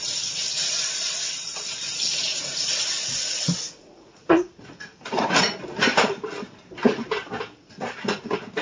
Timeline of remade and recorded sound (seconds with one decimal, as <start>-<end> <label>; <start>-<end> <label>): 0.0-2.3 recorded; 2.3-5.4 remade; 5.4-7.6 recorded; 7.6-8.2 remade; 8.2-8.6 recorded